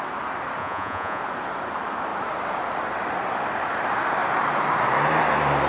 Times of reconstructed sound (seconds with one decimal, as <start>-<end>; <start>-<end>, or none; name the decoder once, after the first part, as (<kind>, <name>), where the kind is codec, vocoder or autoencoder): 0.6-1.2 (vocoder, Vocos)